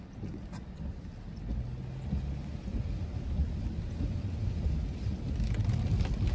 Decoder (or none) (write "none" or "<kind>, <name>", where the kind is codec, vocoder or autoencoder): none